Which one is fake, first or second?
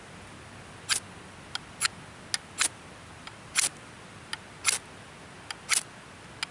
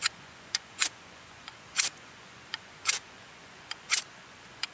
second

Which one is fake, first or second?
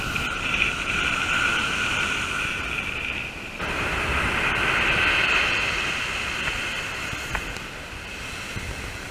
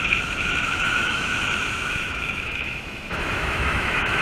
second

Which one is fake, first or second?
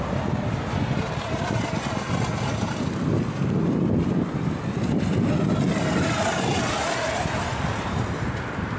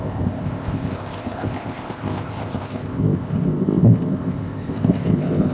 second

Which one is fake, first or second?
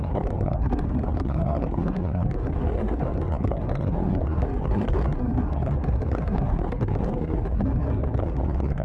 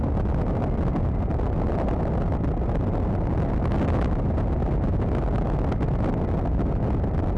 first